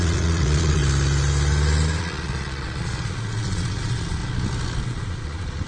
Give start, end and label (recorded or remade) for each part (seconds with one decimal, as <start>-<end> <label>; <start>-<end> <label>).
0.0-0.8 remade; 0.8-2.0 recorded; 2.0-4.2 remade; 4.2-4.8 recorded; 4.8-5.7 remade